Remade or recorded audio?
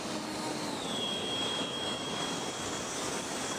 remade